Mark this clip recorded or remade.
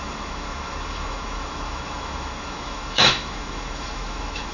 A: remade